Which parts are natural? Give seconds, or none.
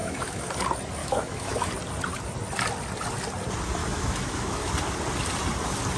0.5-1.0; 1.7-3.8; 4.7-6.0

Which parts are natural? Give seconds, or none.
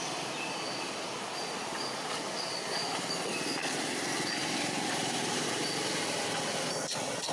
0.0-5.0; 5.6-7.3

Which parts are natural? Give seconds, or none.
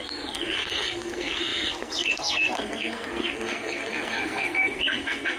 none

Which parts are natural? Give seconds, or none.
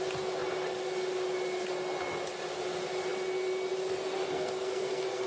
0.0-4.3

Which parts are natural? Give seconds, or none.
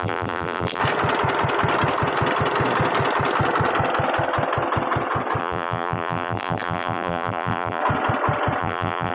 0.8-5.4; 7.8-8.6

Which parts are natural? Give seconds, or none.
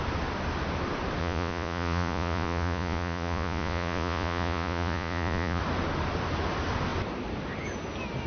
0.0-1.2; 5.6-8.3